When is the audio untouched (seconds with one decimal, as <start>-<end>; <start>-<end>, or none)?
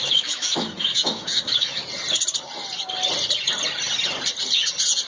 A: 1.8-5.1